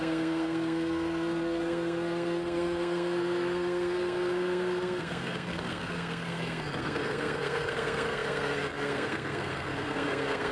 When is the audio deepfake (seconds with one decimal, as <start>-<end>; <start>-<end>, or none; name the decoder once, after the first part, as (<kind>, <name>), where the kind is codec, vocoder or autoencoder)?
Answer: 0.0-10.5 (codec, SNAC)